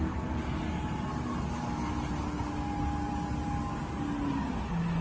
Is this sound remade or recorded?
recorded